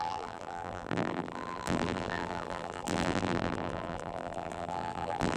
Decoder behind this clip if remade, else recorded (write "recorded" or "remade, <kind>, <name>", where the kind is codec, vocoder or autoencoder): remade, vocoder, BigVGAN v2